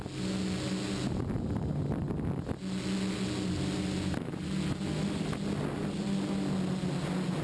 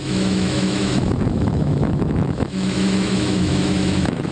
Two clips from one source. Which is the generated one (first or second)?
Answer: second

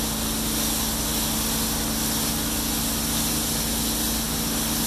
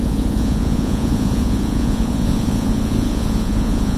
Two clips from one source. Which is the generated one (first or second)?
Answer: second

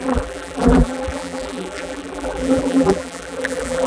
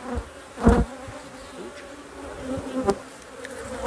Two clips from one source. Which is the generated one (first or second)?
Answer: first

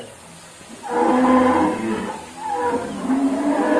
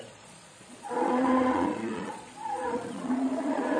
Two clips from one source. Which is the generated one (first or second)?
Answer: second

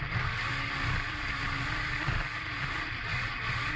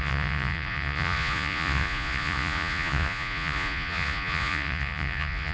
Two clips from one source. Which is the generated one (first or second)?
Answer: second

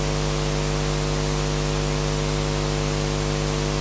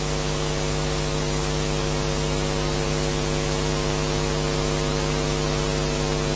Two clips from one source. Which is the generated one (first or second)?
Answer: second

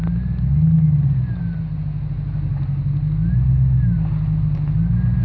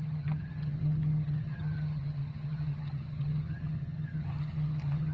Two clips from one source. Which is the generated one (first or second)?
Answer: second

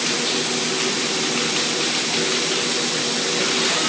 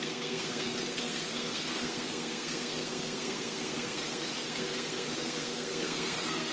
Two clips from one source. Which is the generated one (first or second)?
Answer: second